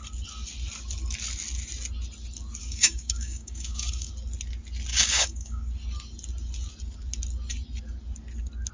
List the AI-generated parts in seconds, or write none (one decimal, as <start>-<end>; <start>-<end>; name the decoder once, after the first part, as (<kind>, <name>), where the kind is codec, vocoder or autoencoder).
2.6-4.1 (codec, DAC); 4.9-5.7